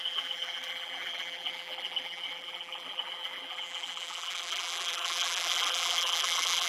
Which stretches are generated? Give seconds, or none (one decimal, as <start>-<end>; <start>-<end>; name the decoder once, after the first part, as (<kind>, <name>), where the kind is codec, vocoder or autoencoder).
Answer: 0.0-6.7 (vocoder, BigVGAN v2)